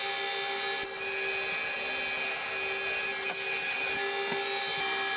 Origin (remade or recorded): recorded